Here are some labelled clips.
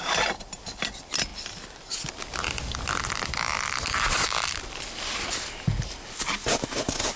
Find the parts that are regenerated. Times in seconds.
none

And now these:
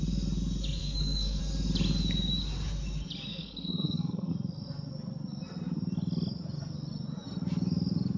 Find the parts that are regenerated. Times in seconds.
0.8-1.4 (codec, SNAC); 3.3-4.3

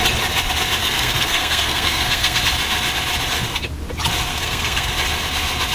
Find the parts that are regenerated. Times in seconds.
0.8-2.4 (codec, SNAC); 4.3-4.9